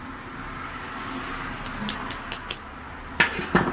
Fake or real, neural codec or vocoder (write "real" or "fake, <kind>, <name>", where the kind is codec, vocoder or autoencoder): real